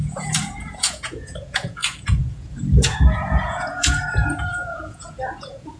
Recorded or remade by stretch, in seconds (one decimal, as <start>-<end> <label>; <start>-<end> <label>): 0.0-5.8 remade

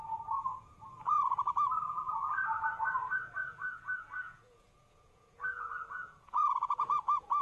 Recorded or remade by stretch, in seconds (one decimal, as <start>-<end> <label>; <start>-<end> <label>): 0.0-7.4 remade

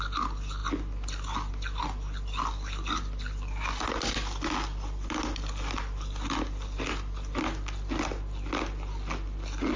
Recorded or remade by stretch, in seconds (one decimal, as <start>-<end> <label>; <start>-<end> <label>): 0.0-9.8 recorded

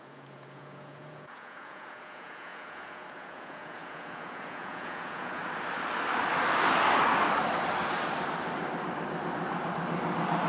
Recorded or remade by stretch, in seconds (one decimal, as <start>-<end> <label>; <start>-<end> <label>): 0.0-5.4 remade; 5.4-10.5 recorded